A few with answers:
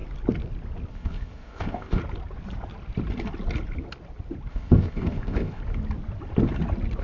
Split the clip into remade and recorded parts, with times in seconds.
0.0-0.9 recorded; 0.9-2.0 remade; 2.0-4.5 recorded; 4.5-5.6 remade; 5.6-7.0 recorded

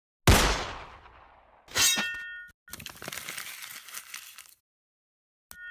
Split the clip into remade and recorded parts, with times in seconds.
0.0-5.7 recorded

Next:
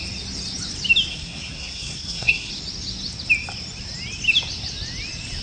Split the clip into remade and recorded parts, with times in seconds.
0.0-1.1 recorded; 1.1-2.5 remade; 2.5-5.4 recorded